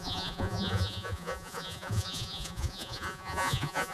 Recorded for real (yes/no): no